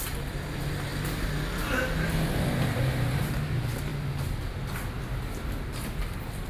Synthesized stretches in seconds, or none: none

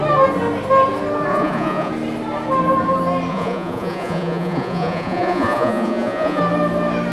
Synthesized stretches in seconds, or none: 1.3-1.9 (vocoder, Vocos); 3.3-6.4

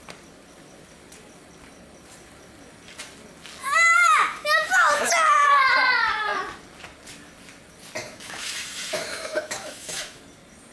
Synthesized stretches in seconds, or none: 3.6-5.1 (autoencoder, DAC-VAE); 8.0-10.2

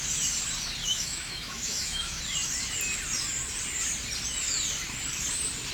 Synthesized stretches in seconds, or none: 0.8-2.2 (autoencoder, DAC-VAE)

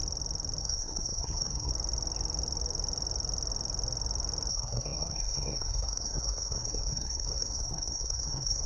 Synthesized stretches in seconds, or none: 0.6-1.7 (codec, SNAC); 4.5-8.7

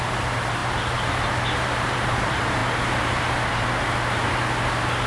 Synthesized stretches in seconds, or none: 0.0-2.6 (vocoder, BigVGAN v2)